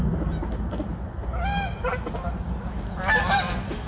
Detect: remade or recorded recorded